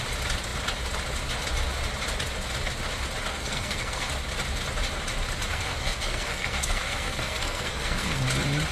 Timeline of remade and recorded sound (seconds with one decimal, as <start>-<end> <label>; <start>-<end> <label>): 0.0-3.3 recorded; 3.3-4.1 remade; 4.1-5.5 recorded; 5.5-8.2 remade; 8.2-8.7 recorded